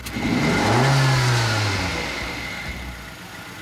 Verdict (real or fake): real